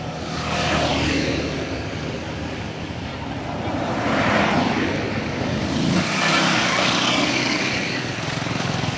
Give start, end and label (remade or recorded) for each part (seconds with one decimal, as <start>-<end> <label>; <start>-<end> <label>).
0.0-3.1 remade; 3.1-4.6 recorded; 4.6-9.0 remade